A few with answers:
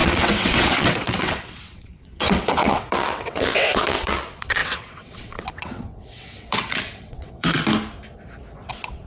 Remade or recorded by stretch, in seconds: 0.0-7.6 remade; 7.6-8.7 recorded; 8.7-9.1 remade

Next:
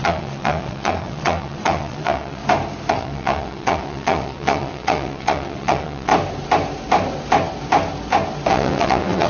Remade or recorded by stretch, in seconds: 0.0-2.4 remade; 2.4-2.9 recorded; 2.9-6.1 remade; 6.1-8.5 recorded; 8.5-9.3 remade

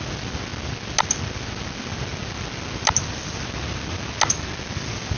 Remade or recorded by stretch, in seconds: 0.0-5.2 recorded